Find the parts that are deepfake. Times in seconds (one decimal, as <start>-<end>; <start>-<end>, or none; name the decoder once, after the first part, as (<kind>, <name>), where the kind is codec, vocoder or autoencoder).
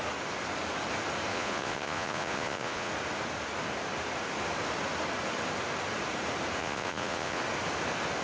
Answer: 1.3-2.9 (vocoder, Vocos); 6.6-7.4